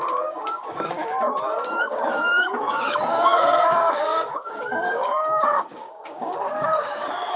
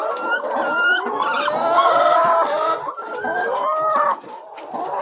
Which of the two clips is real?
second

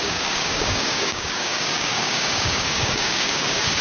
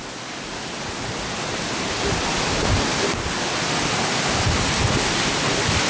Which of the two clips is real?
second